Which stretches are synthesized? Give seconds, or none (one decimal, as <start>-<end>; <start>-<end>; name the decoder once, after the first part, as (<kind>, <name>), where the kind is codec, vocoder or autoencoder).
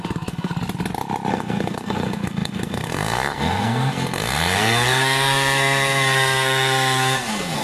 0.0-0.5 (codec, SNAC); 1.3-7.6